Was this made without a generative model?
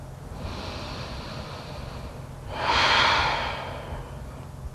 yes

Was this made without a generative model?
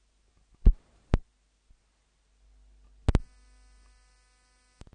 yes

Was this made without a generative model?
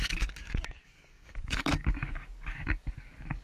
no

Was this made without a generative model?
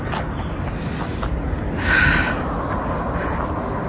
yes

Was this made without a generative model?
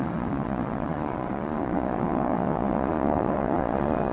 no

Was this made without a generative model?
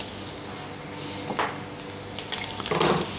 yes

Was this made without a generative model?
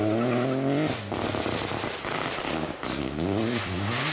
yes